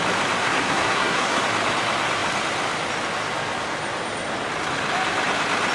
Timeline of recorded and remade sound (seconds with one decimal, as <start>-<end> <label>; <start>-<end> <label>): 0.0-0.4 recorded; 0.4-1.4 remade; 1.4-5.7 recorded